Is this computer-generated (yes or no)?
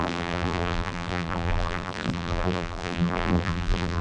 yes